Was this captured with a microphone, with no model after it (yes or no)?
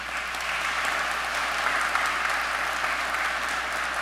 yes